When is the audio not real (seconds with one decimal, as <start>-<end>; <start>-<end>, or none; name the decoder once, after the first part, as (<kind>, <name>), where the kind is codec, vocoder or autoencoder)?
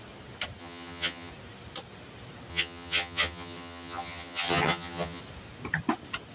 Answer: 0.6-1.3 (vocoder, HiFi-GAN); 2.5-5.2